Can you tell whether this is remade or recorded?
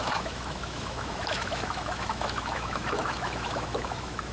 remade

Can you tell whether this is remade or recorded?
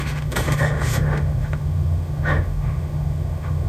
remade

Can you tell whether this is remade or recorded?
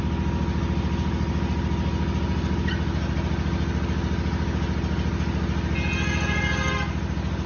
recorded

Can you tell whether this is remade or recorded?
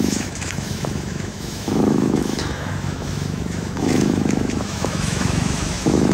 remade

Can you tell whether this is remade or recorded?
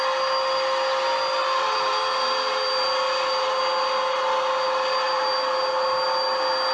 recorded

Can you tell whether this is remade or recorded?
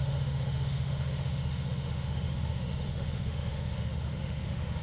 remade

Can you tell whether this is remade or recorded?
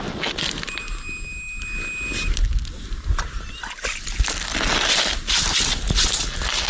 recorded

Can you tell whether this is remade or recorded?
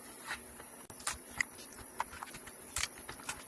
recorded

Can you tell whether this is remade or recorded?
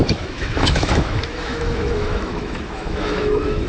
remade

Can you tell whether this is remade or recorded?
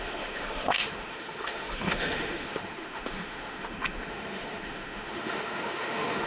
remade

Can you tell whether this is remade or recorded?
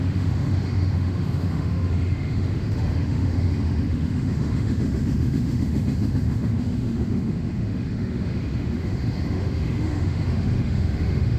remade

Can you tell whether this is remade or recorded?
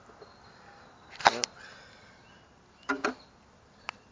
recorded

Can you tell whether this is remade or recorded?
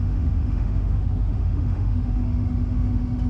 remade